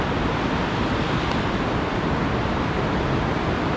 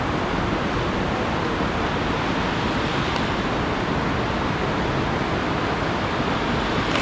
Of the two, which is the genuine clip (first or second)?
second